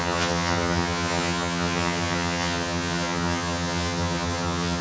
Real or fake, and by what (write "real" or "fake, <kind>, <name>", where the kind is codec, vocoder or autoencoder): fake, vocoder, HiFi-GAN